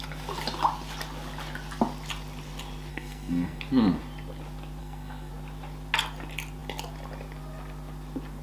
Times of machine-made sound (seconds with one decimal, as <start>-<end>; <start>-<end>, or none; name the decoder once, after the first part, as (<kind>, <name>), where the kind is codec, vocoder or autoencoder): 2.9-3.6 (codec, SNAC); 4.8-5.3